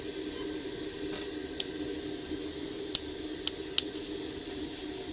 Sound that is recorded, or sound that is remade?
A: recorded